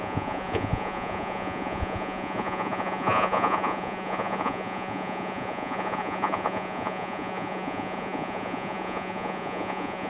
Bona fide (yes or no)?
no